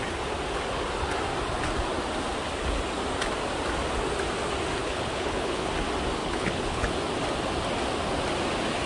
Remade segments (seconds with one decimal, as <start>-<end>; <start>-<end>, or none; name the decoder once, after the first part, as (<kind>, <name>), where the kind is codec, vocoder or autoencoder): 4.8-5.7 (codec, HILCodec); 6.2-6.9